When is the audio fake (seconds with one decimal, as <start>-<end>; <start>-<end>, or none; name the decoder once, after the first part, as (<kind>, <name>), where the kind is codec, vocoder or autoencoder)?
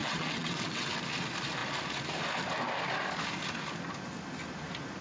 0.0-0.9 (vocoder, WaveNeXt)